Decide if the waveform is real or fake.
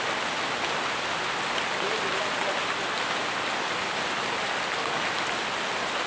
real